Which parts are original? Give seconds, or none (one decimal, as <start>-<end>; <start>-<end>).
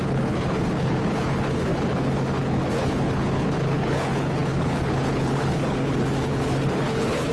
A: none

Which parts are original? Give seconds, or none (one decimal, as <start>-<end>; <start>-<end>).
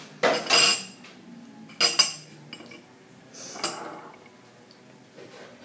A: 0.0-5.6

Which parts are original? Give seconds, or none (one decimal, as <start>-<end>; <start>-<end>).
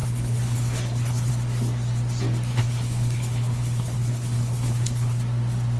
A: 1.3-2.5; 5.2-5.8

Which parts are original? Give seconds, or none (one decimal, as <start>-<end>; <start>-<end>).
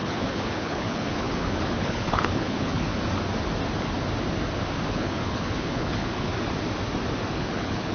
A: 2.9-4.9; 6.3-7.3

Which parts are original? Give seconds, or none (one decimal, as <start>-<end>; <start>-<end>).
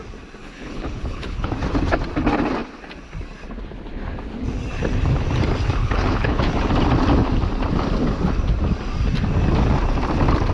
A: 0.0-0.4; 1.5-5.8; 6.5-10.5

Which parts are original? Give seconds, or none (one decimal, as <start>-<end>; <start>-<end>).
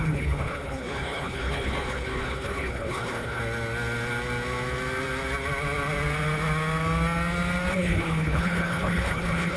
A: 3.4-7.7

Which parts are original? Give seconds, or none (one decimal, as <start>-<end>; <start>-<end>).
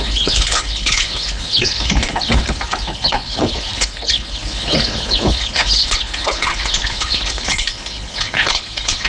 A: none